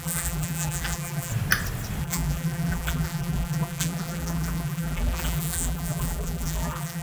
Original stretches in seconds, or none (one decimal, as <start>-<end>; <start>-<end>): 1.3-2.0